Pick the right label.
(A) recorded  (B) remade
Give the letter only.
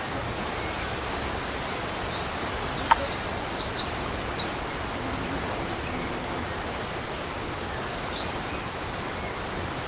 A